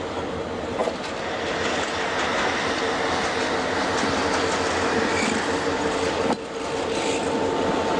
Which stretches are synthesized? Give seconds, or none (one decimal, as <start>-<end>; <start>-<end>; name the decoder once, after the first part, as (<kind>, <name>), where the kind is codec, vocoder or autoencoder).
none